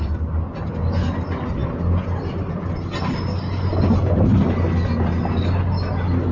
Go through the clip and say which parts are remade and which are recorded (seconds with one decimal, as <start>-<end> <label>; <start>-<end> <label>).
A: 0.0-6.3 recorded